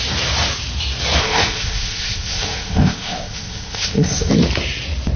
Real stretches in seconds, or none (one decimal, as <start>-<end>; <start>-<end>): 0.0-1.2; 4.3-5.2